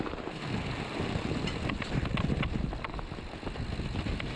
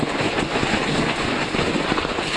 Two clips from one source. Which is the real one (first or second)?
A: first